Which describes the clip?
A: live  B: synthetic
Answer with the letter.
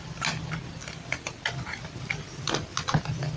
A